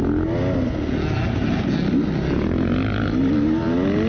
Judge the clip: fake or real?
real